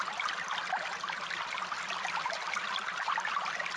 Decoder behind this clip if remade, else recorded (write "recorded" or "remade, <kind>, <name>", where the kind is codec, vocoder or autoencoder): recorded